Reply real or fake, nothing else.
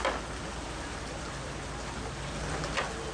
real